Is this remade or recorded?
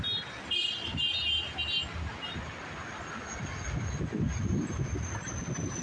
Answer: recorded